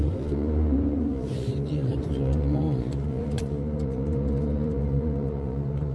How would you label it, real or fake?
fake